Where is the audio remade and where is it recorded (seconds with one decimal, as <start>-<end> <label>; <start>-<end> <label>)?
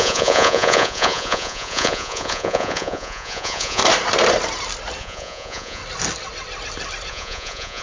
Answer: 0.0-3.8 remade; 3.8-5.0 recorded; 5.0-5.8 remade; 5.8-7.1 recorded; 7.1-7.8 remade